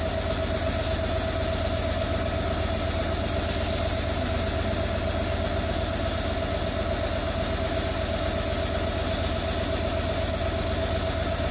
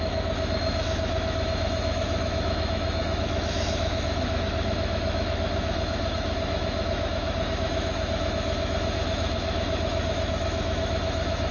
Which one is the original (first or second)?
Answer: first